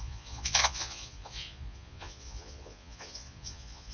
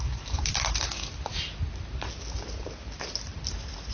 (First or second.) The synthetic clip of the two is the first